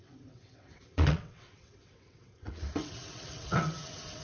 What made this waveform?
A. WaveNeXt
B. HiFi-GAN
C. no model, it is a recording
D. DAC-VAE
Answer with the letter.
A